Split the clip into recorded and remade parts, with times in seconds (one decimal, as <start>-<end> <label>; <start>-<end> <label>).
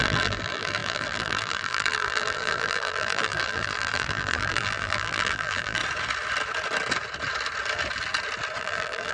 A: 0.0-5.8 remade; 5.8-8.6 recorded; 8.6-9.1 remade